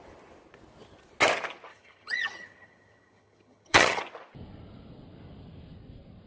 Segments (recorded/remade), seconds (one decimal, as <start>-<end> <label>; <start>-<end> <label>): 0.0-1.7 recorded; 1.7-4.0 remade; 4.0-6.3 recorded